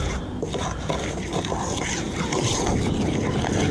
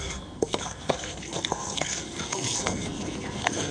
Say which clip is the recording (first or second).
first